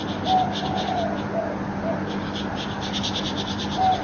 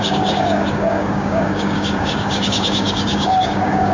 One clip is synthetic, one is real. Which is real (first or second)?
first